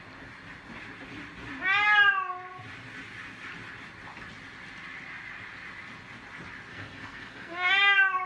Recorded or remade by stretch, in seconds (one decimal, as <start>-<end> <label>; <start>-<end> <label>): 0.0-6.7 recorded; 6.7-7.7 remade; 7.7-8.3 recorded